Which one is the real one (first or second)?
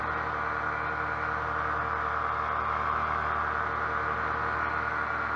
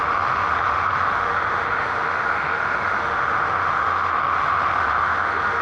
first